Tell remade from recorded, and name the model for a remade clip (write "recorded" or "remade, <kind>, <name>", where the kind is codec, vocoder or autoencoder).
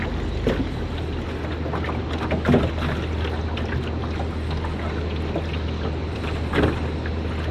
recorded